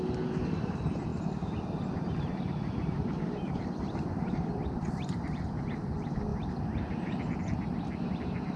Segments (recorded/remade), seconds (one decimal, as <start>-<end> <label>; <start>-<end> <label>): 0.0-1.1 recorded; 1.1-5.2 remade; 5.2-8.6 recorded